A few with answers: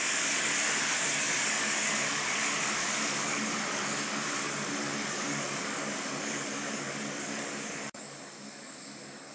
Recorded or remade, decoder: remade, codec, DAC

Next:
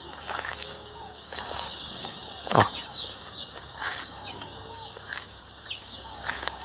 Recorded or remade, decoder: remade, codec, DAC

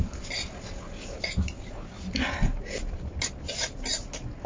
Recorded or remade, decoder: recorded